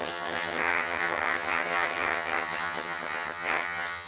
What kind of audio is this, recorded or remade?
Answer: remade